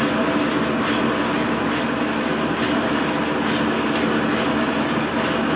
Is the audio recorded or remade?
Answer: recorded